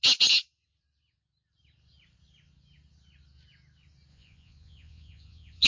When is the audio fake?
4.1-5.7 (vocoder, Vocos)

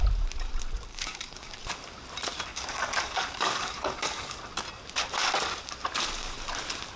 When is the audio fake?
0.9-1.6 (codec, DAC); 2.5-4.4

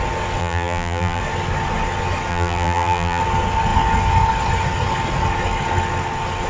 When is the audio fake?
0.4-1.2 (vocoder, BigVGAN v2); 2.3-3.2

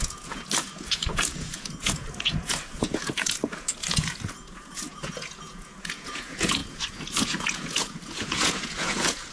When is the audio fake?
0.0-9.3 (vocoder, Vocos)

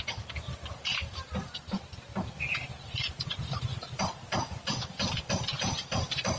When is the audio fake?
0.9-2.3 (vocoder, BigVGAN v2); 2.7-5.2

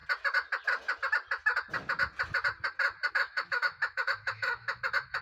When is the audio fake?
3.1-5.2 (autoencoder, DAC-VAE)